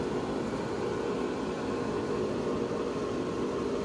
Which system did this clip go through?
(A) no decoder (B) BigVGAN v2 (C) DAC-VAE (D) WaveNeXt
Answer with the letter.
A